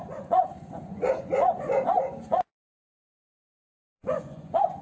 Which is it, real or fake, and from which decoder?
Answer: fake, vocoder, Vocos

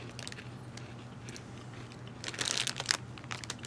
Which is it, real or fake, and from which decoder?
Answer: real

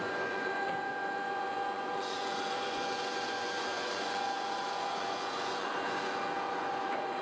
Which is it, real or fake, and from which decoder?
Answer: fake, vocoder, Vocos